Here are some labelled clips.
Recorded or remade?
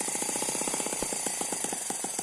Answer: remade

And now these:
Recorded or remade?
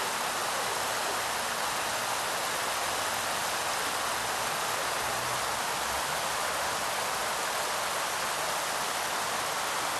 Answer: recorded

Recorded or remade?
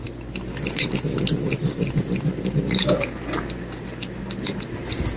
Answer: recorded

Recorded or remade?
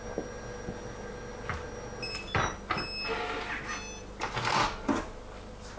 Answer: recorded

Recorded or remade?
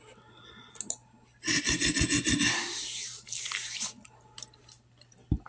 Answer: recorded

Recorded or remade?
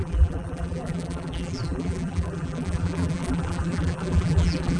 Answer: remade